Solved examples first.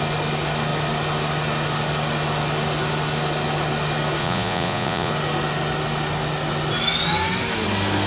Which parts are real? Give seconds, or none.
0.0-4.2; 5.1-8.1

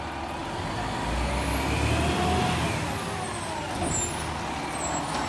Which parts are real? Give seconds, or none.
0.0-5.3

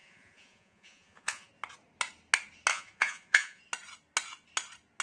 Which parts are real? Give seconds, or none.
1.5-2.7; 3.6-5.0